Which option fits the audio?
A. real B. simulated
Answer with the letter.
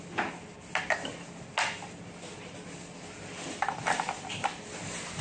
A